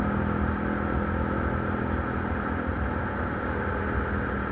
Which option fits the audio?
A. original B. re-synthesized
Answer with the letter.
A